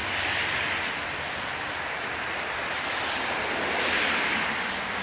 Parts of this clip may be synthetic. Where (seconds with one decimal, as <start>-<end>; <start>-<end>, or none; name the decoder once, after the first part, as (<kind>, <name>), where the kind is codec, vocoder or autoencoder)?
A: 0.0-3.0 (vocoder, BigVGAN v2)